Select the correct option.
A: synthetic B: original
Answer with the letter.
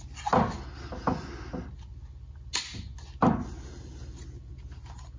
B